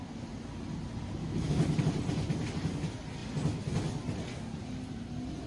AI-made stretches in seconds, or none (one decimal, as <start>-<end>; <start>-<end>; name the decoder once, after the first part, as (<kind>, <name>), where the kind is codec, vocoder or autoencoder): 1.2-1.8 (autoencoder, DAC-VAE)